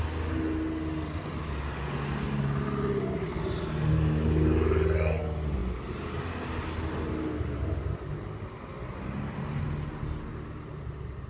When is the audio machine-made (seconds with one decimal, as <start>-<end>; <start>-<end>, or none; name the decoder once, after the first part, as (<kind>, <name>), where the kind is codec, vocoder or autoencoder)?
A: none